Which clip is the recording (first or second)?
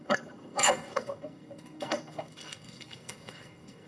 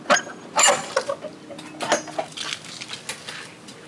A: second